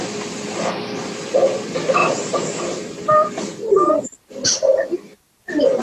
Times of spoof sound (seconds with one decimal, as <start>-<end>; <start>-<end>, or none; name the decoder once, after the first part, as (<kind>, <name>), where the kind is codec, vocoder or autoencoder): 2.0-3.9 (vocoder, BigVGAN v2); 4.5-5.8